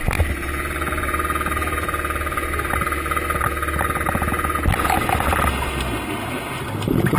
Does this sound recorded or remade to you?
recorded